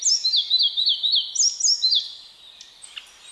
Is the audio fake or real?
real